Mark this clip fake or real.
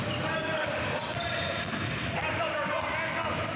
real